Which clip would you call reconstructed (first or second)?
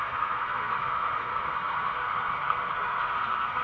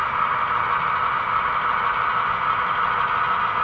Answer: first